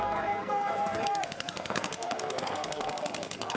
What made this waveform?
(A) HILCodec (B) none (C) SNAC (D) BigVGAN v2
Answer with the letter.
C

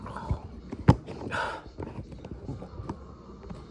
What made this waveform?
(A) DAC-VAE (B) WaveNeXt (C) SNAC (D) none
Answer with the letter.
D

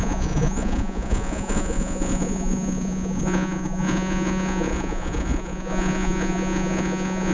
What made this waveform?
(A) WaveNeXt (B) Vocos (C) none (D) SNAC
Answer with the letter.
B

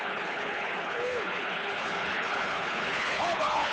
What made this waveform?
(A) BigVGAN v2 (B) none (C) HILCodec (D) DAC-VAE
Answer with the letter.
C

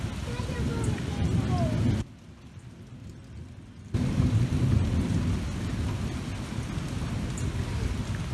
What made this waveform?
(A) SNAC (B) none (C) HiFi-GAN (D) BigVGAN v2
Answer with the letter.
B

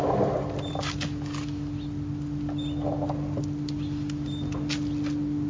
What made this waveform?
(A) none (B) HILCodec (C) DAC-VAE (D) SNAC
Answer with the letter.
A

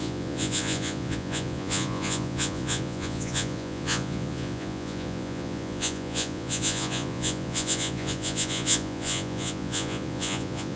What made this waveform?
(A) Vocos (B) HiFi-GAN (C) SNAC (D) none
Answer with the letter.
A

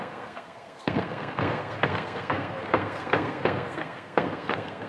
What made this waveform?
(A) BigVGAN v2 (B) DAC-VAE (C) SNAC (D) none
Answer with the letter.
C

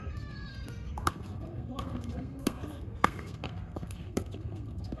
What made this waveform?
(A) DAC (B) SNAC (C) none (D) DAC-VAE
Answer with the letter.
B